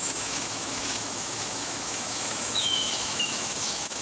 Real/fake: fake